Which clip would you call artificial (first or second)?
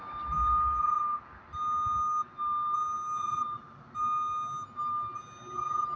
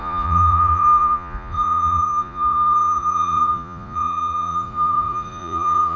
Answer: second